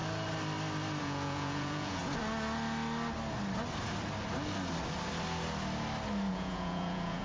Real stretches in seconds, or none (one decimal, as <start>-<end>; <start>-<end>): 0.0-1.0; 2.0-6.3